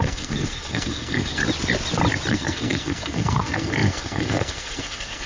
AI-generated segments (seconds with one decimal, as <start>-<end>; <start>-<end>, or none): 0.0-1.4; 2.3-5.3